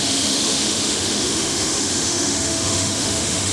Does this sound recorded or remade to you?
remade